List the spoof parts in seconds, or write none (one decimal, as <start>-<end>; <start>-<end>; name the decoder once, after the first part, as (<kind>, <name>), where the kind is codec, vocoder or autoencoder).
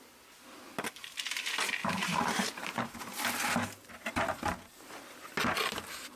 1.8-2.9 (vocoder, BigVGAN v2)